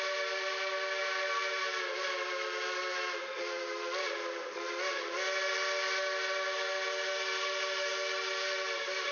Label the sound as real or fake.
real